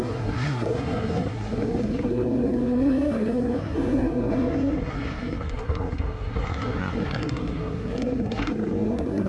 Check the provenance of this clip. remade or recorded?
remade